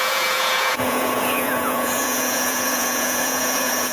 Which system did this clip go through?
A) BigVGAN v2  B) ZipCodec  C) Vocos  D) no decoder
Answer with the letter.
C